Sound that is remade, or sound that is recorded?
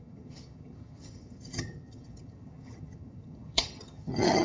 remade